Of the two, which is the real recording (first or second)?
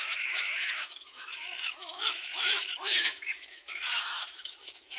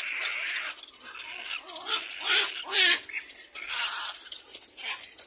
second